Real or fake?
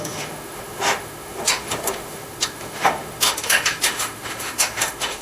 fake